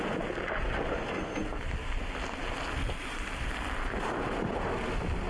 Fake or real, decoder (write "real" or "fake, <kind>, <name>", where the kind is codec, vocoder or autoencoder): real